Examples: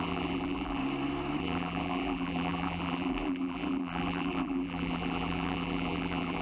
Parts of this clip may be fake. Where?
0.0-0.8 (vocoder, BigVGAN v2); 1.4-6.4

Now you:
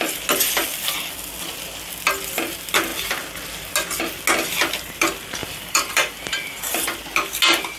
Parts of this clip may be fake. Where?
5.4-7.0 (vocoder, BigVGAN v2)